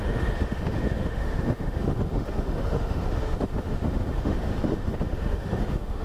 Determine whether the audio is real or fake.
fake